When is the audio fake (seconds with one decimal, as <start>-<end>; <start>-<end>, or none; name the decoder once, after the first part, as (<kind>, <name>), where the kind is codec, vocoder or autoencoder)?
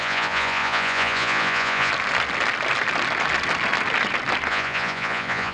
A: 0.0-1.9 (vocoder, Vocos); 4.5-5.5